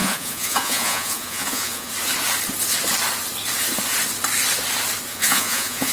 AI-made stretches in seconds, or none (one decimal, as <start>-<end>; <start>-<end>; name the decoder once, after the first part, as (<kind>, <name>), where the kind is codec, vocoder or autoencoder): 0.0-1.9 (vocoder, Vocos); 5.1-5.9